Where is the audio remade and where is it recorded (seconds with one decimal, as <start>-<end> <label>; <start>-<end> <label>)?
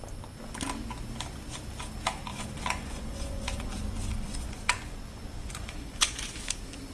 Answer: 0.0-2.3 recorded; 2.3-6.4 remade; 6.4-6.9 recorded